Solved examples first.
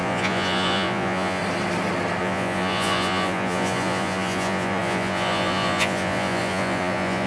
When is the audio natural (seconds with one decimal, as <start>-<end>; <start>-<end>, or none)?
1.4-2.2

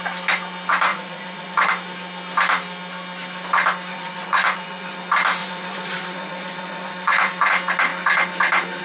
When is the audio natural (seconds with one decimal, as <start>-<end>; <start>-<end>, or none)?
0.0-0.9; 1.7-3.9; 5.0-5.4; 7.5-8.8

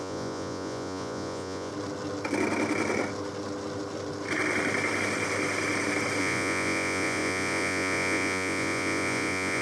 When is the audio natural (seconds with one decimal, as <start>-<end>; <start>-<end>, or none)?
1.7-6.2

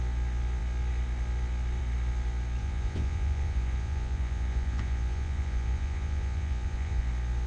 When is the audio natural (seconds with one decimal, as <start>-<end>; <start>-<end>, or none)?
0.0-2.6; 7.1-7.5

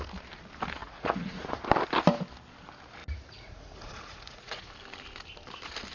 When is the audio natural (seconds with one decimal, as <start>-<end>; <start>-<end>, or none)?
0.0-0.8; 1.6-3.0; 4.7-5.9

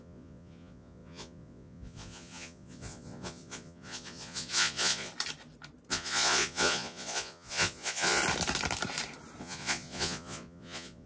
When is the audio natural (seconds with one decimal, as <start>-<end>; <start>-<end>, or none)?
5.1-5.9; 8.2-9.4

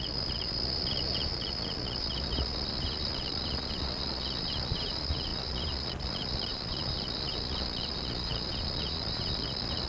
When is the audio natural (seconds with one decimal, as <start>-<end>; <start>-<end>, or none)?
none